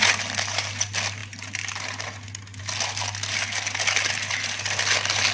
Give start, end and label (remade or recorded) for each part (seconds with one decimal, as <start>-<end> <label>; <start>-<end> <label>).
0.0-5.3 recorded